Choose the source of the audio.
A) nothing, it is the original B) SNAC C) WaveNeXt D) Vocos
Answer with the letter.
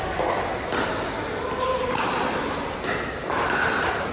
A